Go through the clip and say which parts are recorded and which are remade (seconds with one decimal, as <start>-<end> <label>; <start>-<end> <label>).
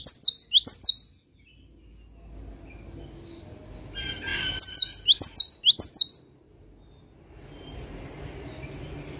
0.0-9.2 recorded